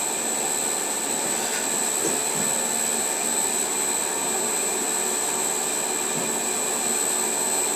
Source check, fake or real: real